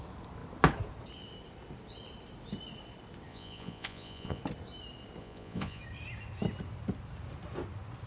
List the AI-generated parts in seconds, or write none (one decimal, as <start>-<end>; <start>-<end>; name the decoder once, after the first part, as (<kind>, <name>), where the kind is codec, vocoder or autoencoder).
3.3-4.4 (vocoder, Vocos); 5.2-5.8